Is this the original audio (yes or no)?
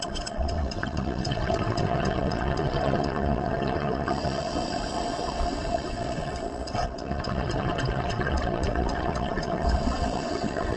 no